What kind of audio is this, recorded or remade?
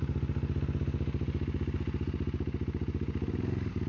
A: recorded